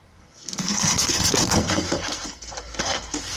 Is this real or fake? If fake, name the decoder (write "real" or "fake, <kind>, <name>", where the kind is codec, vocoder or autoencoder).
fake, codec, SNAC